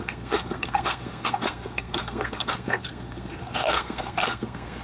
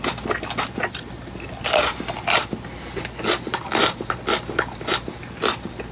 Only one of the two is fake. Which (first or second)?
first